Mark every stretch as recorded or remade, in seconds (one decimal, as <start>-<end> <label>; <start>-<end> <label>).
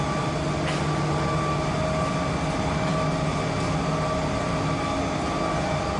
0.0-6.0 recorded